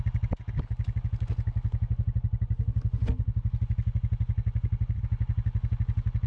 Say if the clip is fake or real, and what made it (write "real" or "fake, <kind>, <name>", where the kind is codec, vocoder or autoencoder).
real